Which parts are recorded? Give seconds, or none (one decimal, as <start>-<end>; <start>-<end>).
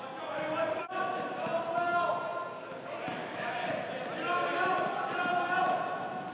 0.0-3.2; 3.7-6.3